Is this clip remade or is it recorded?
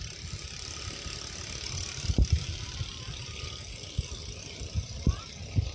recorded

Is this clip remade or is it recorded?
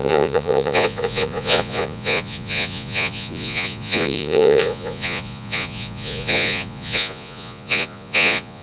remade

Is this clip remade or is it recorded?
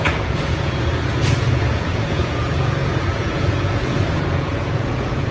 remade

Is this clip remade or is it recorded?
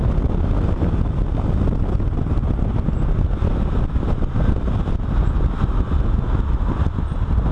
recorded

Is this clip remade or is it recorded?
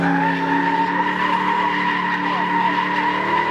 recorded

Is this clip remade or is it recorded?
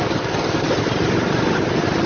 recorded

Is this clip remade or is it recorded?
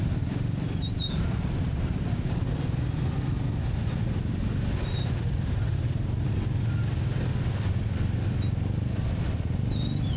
recorded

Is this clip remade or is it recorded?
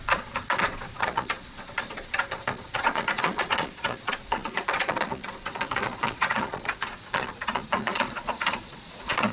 remade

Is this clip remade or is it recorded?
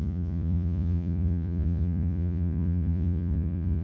remade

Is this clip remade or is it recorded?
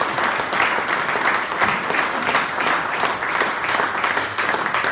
recorded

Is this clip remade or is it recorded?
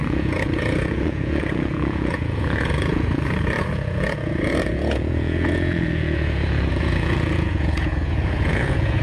remade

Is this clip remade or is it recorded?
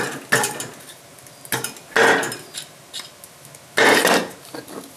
recorded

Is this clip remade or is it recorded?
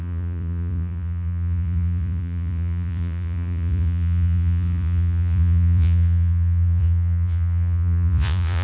remade